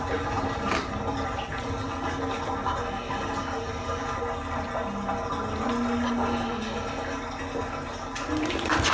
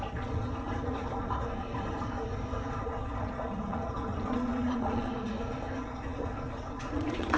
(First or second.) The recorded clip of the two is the first